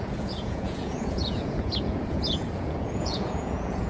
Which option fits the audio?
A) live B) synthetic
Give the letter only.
B